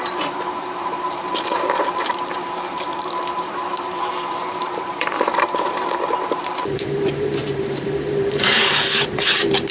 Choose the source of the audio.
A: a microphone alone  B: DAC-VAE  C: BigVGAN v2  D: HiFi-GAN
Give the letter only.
C